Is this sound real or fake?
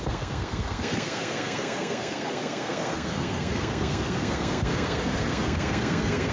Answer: fake